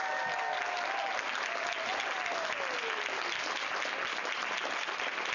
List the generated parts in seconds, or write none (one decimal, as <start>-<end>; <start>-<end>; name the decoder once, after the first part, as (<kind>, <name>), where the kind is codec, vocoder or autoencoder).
none